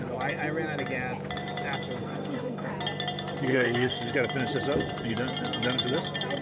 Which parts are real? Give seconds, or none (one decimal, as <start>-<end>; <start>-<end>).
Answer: 0.0-2.0; 2.7-3.5; 4.1-6.4